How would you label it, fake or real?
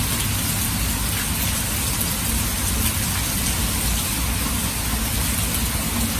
real